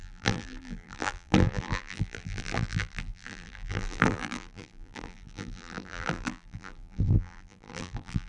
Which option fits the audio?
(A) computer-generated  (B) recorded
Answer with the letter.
A